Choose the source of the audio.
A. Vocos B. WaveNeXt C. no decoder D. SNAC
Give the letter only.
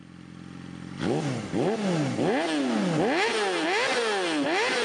C